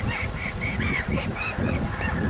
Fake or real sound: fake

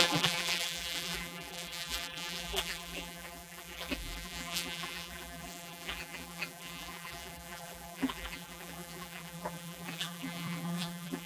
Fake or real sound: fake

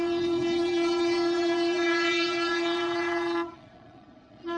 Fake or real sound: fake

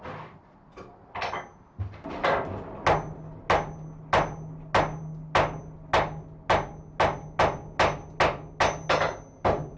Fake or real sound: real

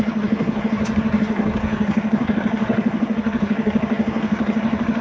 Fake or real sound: fake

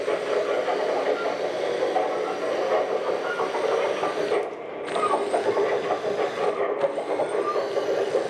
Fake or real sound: real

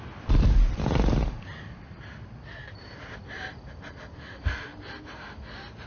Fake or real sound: real